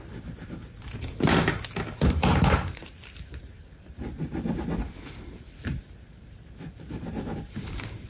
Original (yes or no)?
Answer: no